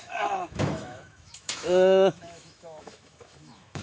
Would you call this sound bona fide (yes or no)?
no